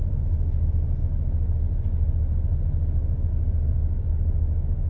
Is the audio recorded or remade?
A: recorded